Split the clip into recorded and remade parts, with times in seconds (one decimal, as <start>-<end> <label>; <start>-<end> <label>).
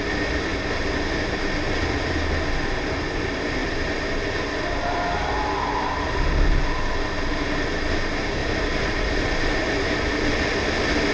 0.0-3.6 recorded; 3.6-4.2 remade; 4.2-8.4 recorded; 8.4-9.6 remade; 9.6-11.1 recorded